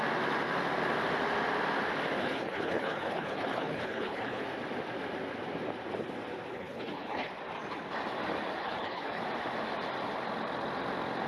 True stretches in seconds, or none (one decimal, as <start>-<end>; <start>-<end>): 0.0-2.2; 4.4-6.5; 7.3-8.6; 9.2-11.3